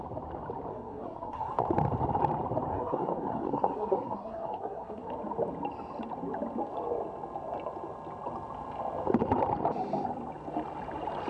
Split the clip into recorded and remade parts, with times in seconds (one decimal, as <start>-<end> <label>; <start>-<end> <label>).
0.0-0.7 recorded; 0.7-1.5 remade; 1.5-2.7 recorded; 2.7-5.1 remade; 5.1-11.3 recorded